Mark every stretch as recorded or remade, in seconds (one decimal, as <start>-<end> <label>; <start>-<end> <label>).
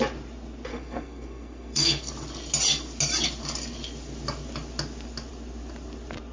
0.0-0.7 recorded; 0.7-2.1 remade; 2.1-6.3 recorded